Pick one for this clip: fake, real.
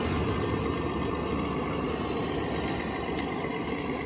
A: real